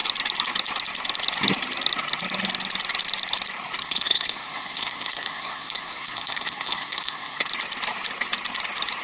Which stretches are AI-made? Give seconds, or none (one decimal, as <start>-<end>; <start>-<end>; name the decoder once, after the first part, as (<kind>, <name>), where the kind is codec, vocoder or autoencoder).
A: 3.8-7.5 (codec, SNAC)